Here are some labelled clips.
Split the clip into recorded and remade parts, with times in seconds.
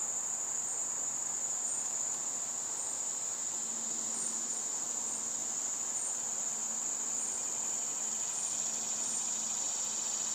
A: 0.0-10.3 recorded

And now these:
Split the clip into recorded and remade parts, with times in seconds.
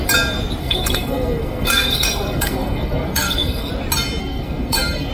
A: 0.0-0.6 recorded; 0.6-3.7 remade; 3.7-4.2 recorded; 4.2-5.1 remade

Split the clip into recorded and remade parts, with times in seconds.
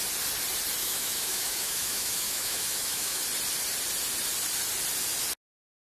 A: 0.0-0.8 recorded; 0.8-3.2 remade; 3.2-6.0 recorded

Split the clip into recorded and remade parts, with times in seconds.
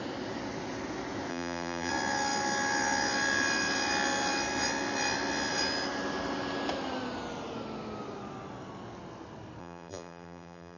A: 0.0-1.3 recorded; 1.3-1.9 remade; 1.9-9.6 recorded; 9.6-10.8 remade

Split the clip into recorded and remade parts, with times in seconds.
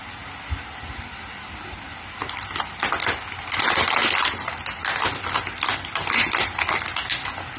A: 0.0-7.6 recorded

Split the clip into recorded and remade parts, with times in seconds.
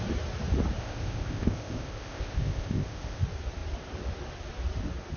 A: 0.0-0.8 recorded; 0.8-3.2 remade; 3.2-5.2 recorded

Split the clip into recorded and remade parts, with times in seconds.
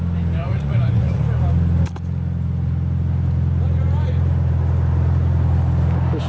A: 0.0-0.4 recorded; 0.4-1.2 remade; 1.2-6.3 recorded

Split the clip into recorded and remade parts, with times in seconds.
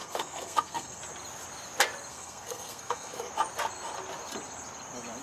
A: 0.0-1.0 remade; 1.0-2.1 recorded; 2.1-3.3 remade; 3.3-5.2 recorded